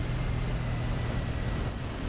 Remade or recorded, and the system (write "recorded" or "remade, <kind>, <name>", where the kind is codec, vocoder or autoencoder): recorded